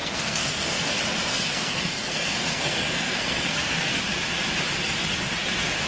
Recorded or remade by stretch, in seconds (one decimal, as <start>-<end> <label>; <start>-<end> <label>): 0.0-0.9 remade; 0.9-1.3 recorded; 1.3-4.0 remade; 4.0-5.9 recorded